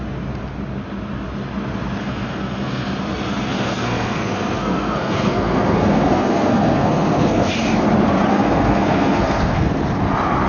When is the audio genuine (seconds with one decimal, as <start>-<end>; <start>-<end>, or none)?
0.0-2.0; 2.9-3.5; 7.5-8.3; 9.7-10.5